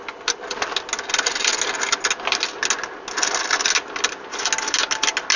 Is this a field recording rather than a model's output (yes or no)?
yes